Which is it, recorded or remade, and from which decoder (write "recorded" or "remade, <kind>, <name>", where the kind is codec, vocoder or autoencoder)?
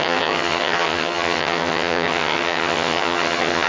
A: remade, vocoder, HiFi-GAN